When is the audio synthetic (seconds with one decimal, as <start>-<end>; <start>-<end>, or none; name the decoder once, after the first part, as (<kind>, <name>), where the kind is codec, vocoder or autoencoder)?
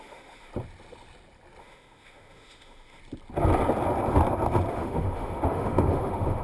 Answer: 0.0-0.5 (autoencoder, DAC-VAE); 1.6-3.0; 4.7-6.4